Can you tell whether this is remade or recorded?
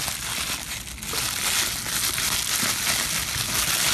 recorded